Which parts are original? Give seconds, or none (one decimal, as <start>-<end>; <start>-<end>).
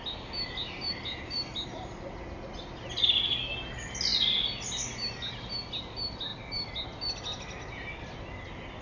0.0-8.8